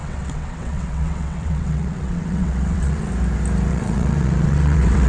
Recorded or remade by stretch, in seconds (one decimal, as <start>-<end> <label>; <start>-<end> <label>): 0.0-3.1 remade; 3.1-3.7 recorded; 3.7-5.1 remade